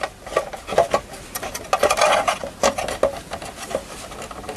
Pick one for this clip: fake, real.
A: real